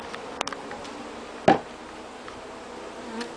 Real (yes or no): yes